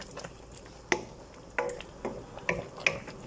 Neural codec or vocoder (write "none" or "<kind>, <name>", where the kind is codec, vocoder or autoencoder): none